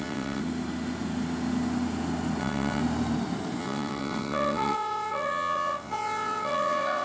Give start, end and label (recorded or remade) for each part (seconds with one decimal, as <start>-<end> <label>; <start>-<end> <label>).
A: 0.0-0.4 remade; 0.4-2.4 recorded; 2.4-2.8 remade; 2.8-3.6 recorded; 3.6-7.0 remade